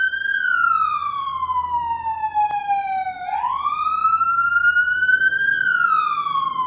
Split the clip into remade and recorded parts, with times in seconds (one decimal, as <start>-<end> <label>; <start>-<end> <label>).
0.0-6.7 recorded